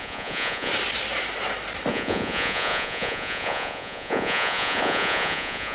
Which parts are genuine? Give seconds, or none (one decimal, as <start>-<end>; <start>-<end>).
0.7-1.9